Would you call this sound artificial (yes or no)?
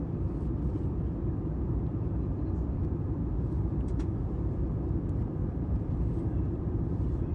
yes